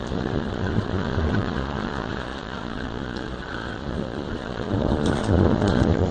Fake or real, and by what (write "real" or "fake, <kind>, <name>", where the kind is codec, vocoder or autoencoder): fake, vocoder, Vocos